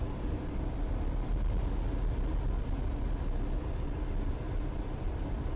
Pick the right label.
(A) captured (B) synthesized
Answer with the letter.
A